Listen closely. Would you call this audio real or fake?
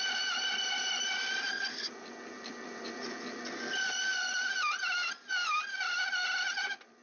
real